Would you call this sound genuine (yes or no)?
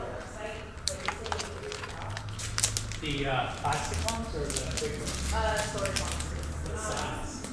yes